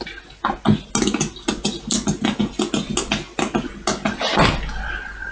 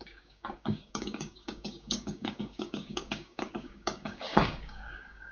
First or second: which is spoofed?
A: second